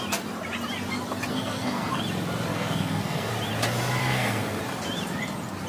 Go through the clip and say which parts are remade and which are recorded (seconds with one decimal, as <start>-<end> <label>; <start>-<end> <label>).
0.0-1.3 recorded; 1.3-2.0 remade; 2.0-2.5 recorded; 2.5-3.3 remade; 3.3-4.0 recorded; 4.0-4.6 remade; 4.6-5.7 recorded